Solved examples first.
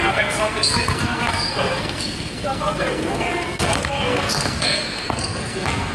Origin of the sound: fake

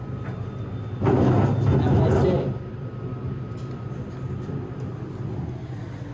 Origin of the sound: real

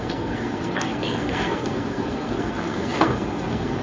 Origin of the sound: fake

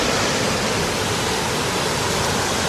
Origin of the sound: real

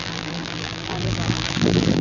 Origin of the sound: fake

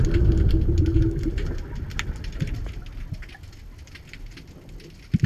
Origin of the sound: real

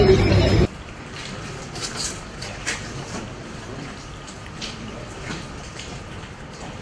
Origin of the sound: fake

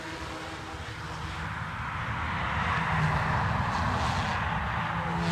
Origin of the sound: real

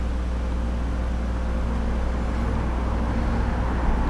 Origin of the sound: real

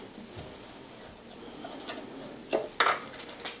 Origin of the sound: real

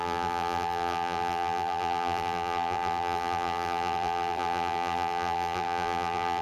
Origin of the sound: fake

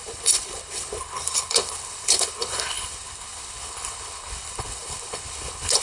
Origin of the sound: fake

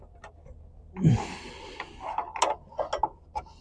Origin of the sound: real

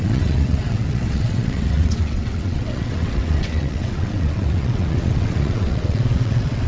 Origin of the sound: fake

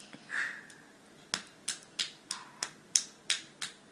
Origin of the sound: real